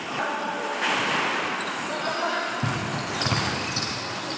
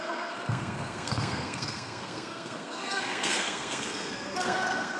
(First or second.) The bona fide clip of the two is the first